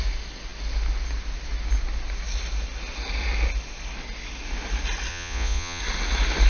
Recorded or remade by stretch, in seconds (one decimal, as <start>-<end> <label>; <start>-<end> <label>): 0.0-5.1 recorded; 5.1-5.8 remade; 5.8-6.5 recorded